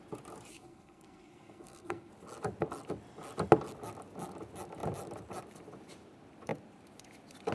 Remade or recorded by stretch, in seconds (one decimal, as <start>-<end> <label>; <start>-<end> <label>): 0.0-0.5 recorded; 0.5-2.1 remade; 2.1-7.5 recorded